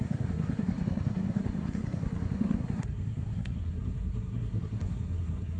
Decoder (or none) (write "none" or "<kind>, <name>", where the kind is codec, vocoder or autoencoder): codec, SNAC